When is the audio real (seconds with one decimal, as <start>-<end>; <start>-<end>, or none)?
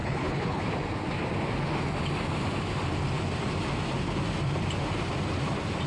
0.6-5.9